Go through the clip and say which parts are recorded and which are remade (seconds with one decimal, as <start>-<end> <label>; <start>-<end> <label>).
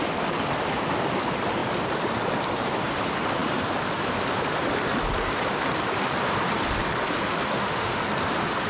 0.0-7.5 recorded; 7.5-8.0 remade; 8.0-8.7 recorded